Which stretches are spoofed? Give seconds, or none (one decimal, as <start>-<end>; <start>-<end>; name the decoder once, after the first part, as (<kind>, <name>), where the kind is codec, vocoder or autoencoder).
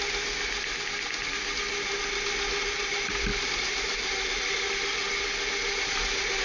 none